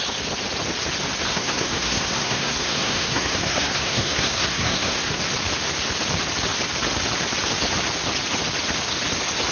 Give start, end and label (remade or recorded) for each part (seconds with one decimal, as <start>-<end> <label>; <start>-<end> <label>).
0.0-1.3 recorded; 1.3-5.2 remade; 5.2-9.5 recorded